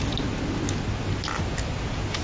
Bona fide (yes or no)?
yes